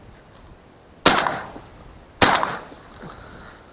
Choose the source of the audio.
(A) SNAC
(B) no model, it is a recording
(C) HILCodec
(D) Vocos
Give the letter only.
B